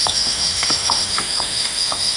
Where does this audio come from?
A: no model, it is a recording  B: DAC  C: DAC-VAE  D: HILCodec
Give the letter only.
C